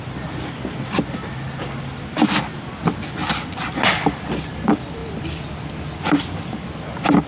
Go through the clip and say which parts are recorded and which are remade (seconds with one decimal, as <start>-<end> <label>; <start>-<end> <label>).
0.0-2.5 remade; 2.5-3.1 recorded; 3.1-5.0 remade; 5.0-6.2 recorded; 6.2-7.3 remade